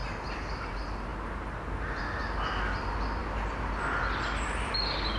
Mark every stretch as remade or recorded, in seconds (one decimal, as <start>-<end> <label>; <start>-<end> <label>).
0.0-5.2 recorded